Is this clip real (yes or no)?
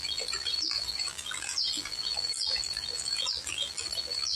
no